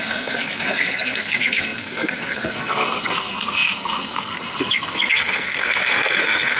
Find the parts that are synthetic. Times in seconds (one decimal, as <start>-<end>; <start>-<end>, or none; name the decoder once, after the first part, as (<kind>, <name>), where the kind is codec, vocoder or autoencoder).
0.0-6.6 (codec, SNAC)